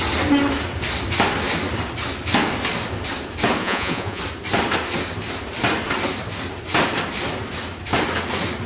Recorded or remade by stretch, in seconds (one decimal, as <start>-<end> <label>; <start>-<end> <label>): 0.0-3.6 recorded; 3.6-4.2 remade; 4.2-8.7 recorded